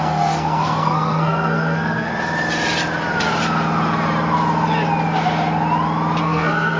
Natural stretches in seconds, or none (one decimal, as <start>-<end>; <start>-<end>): 2.1-6.2